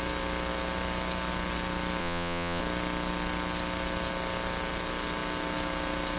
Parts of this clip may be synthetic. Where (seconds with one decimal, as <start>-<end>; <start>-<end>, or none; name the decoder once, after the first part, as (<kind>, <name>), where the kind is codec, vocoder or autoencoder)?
2.0-2.6 (vocoder, Vocos)